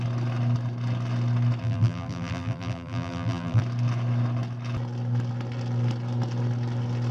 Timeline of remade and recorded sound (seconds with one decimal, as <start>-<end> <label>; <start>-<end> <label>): 0.0-1.6 recorded; 1.6-3.6 remade; 3.6-7.1 recorded